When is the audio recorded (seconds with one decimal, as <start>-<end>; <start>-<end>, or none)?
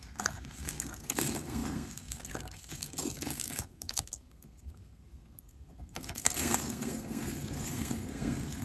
none